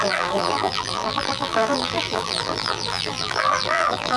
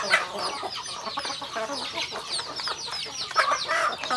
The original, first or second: second